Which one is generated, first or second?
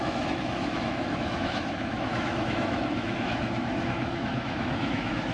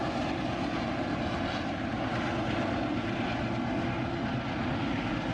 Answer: first